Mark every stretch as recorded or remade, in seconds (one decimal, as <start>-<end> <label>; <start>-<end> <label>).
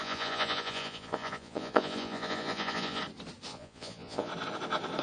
0.0-3.0 remade; 3.0-3.5 recorded; 3.5-4.3 remade; 4.3-5.0 recorded